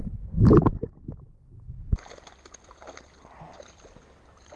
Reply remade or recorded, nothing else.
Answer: recorded